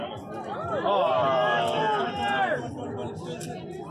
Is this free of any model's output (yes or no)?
yes